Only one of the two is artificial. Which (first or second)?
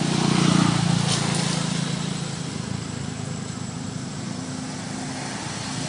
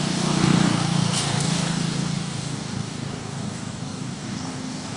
second